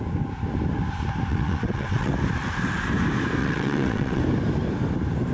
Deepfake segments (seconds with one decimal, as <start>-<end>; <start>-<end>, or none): 1.3-2.1; 3.4-4.2